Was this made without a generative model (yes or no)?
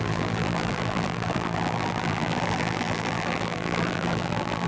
no